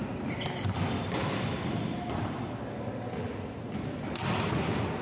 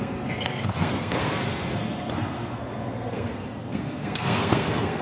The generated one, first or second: second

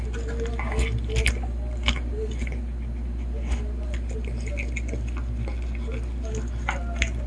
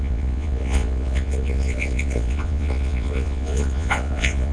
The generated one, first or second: second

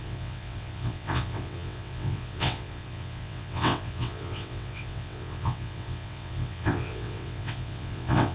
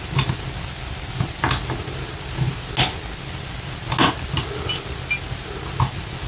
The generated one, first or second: first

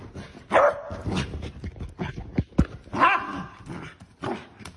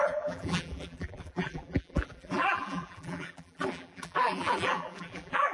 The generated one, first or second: second